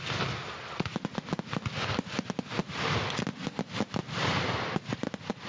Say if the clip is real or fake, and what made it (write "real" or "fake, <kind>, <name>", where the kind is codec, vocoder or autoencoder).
real